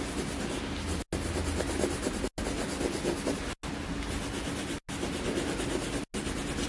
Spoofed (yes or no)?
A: no